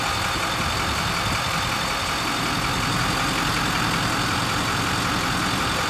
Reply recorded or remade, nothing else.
recorded